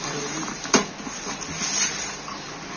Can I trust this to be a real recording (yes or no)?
yes